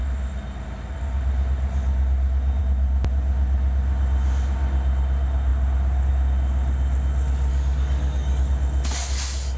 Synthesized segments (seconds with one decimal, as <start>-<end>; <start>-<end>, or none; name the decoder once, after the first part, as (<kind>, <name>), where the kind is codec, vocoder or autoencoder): 7.5-8.5 (codec, DAC)